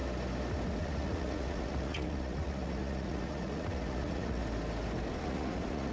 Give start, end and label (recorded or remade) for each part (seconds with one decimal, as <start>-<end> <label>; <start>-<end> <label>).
0.0-0.8 recorded; 0.8-4.4 remade; 4.4-5.2 recorded; 5.2-5.9 remade